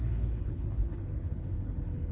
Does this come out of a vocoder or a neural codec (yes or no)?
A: yes